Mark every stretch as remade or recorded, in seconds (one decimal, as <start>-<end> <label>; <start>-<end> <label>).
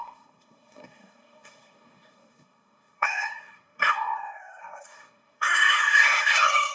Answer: 0.0-6.7 remade